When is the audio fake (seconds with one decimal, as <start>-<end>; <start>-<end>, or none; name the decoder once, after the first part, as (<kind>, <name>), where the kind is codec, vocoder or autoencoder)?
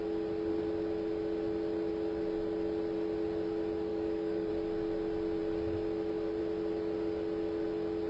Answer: 3.9-4.5 (codec, DAC)